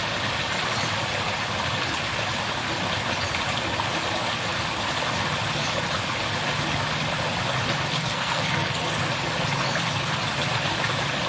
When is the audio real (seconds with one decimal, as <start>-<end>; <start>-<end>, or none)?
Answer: 0.0-8.0; 9.0-11.3